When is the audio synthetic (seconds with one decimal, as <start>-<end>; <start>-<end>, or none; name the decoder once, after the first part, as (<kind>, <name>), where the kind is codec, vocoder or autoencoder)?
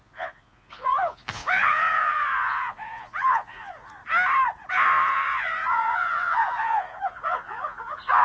0.0-4.0 (vocoder, Vocos); 4.7-8.2